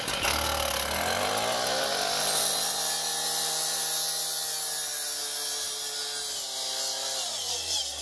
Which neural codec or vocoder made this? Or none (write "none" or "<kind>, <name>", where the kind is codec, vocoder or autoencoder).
none